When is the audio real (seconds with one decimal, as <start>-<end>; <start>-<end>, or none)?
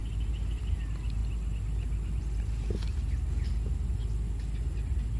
0.0-5.2